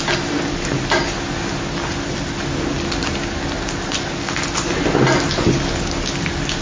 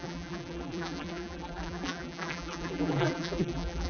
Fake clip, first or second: second